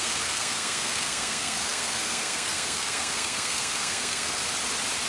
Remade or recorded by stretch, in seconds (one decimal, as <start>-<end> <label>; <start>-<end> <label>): 0.0-4.4 remade; 4.4-5.1 recorded